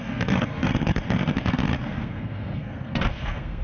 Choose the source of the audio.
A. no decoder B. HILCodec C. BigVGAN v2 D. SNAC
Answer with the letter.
D